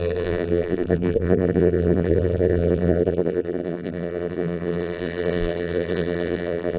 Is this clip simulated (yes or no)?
yes